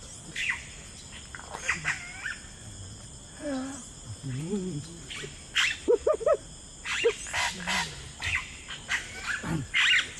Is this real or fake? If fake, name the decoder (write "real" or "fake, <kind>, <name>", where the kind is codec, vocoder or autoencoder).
real